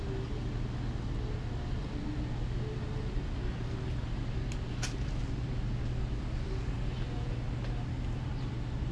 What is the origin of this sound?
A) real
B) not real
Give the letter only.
A